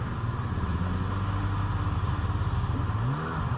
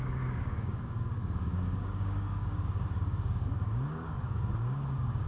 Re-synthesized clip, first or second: second